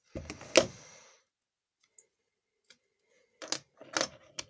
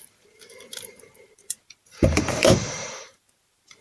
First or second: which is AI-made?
second